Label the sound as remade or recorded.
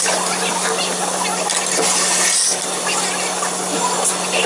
recorded